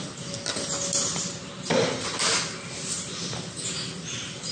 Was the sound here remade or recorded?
recorded